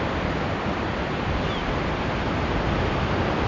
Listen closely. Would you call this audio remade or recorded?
recorded